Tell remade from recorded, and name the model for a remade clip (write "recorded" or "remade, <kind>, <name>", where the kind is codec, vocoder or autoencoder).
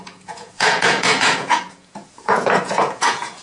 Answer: remade, vocoder, Vocos